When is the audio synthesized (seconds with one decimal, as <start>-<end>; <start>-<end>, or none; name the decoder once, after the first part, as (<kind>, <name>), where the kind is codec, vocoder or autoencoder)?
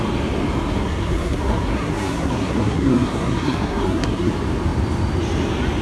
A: 0.8-4.3 (codec, SNAC)